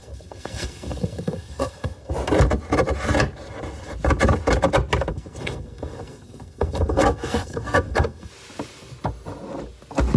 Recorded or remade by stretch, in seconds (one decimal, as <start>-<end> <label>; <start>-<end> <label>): 0.0-2.1 remade; 2.1-5.1 recorded; 5.1-8.3 remade; 8.3-10.2 recorded

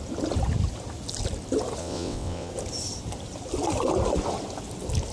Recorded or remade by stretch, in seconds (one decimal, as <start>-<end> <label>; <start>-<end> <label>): 0.0-1.8 recorded; 1.8-2.5 remade; 2.5-5.1 recorded

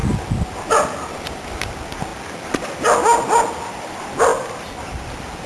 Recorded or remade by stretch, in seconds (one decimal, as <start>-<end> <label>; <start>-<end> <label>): 0.0-5.5 recorded

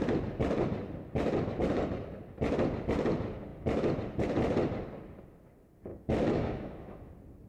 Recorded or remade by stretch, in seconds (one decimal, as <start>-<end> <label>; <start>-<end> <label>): 0.0-5.9 recorded; 5.9-7.1 remade; 7.1-7.5 recorded

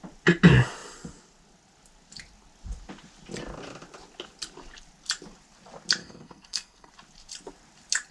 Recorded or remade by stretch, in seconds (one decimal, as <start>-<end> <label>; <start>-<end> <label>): 0.0-6.0 recorded; 6.0-6.9 remade; 6.9-8.1 recorded

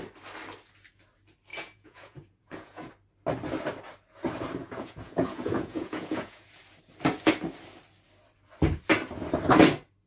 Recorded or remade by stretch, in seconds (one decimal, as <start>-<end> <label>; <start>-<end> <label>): 0.0-1.5 recorded; 1.5-2.9 remade; 2.9-4.6 recorded; 4.6-6.6 remade; 6.6-10.1 recorded

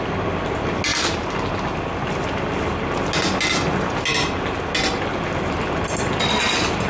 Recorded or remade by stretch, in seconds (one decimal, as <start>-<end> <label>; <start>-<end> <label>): 0.0-6.9 recorded